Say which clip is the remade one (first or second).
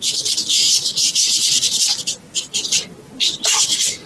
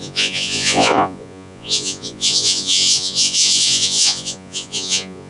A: second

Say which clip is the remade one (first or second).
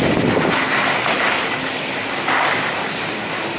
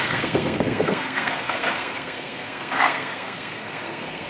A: second